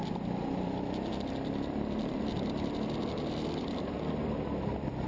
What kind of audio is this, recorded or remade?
remade